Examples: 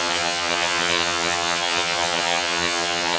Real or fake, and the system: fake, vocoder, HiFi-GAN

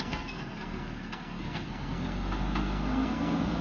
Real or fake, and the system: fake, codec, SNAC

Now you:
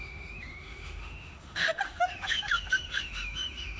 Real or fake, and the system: fake, autoencoder, DAC-VAE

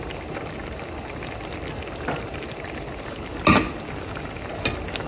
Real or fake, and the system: real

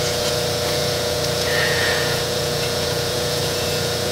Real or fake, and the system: fake, vocoder, Vocos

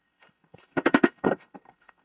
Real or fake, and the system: fake, codec, SNAC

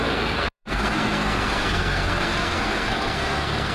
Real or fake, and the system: fake, codec, SNAC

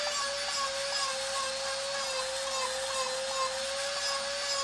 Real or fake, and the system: real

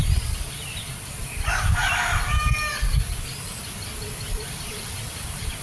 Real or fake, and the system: real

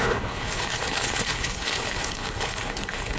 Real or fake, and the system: fake, codec, HILCodec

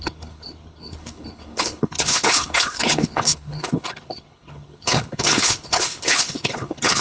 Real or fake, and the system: fake, codec, HILCodec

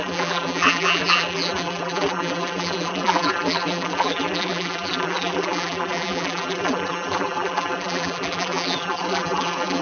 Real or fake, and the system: fake, vocoder, BigVGAN v2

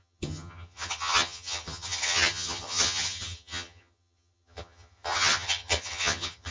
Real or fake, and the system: fake, vocoder, HiFi-GAN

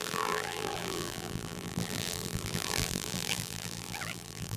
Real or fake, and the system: fake, vocoder, BigVGAN v2